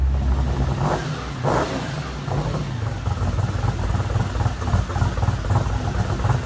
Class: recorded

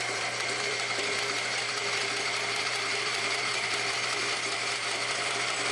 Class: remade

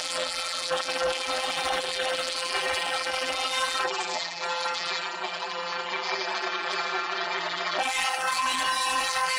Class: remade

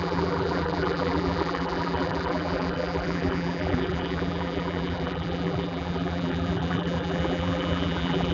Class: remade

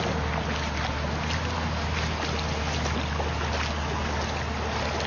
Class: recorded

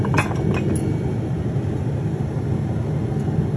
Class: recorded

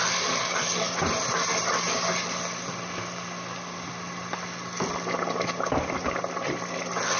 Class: recorded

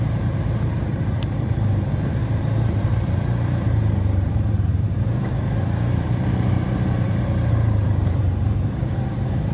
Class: remade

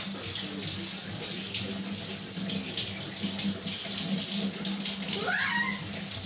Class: recorded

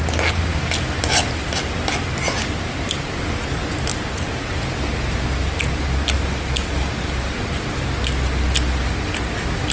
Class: recorded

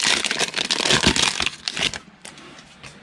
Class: recorded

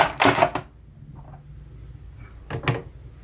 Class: recorded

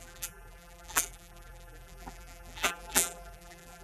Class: remade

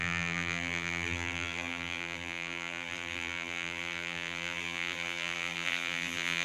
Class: remade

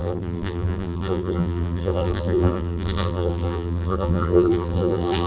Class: remade